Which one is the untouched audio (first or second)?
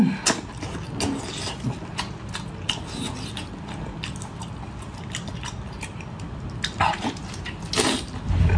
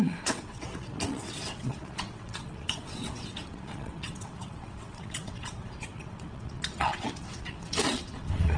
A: first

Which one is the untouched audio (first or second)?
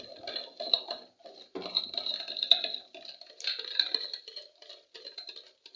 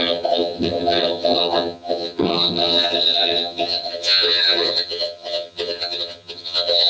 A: first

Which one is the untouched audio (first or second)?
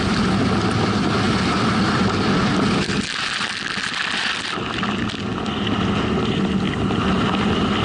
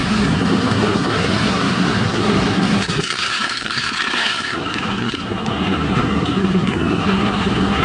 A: first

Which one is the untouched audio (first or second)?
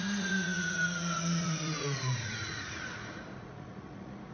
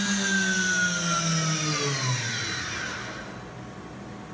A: second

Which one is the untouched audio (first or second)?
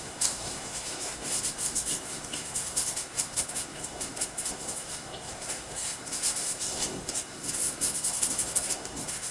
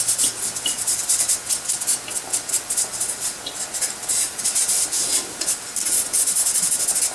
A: second